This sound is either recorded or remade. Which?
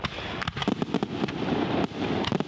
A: recorded